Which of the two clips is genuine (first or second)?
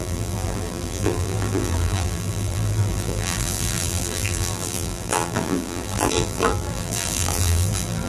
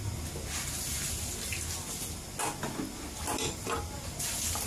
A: second